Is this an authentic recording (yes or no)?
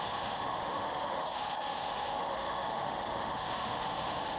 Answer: no